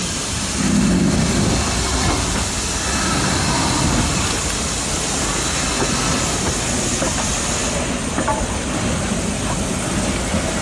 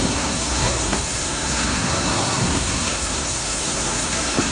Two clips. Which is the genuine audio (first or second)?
first